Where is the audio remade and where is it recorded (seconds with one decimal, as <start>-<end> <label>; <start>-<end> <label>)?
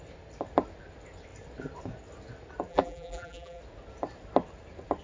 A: 0.0-2.7 recorded; 2.7-3.6 remade; 3.6-5.0 recorded